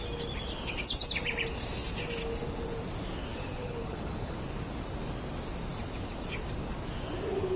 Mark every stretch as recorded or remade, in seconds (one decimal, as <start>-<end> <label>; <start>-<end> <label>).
0.0-3.4 recorded; 3.4-4.4 remade; 4.4-7.6 recorded